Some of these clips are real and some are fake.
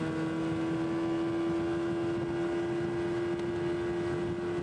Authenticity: real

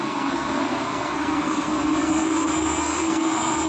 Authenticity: fake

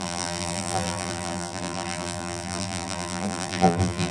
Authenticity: fake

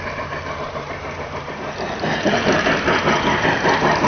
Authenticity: fake